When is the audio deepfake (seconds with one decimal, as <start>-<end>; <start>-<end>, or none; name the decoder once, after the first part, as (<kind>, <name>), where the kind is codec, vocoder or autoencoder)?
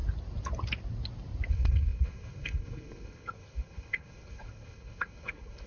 1.5-5.7 (codec, HILCodec)